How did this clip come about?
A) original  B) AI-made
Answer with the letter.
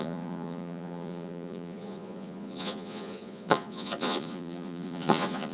B